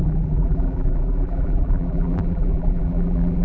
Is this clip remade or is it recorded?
remade